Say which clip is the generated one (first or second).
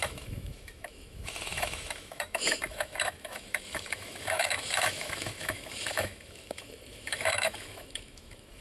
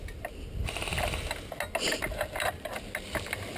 first